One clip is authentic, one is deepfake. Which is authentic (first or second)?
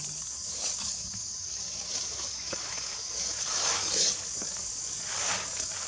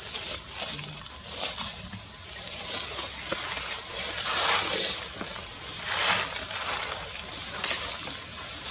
second